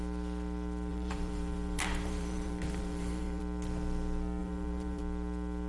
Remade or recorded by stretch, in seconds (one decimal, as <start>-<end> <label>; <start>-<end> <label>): 0.0-0.9 recorded; 0.9-3.4 remade; 3.4-4.4 recorded; 4.4-5.0 remade; 5.0-5.7 recorded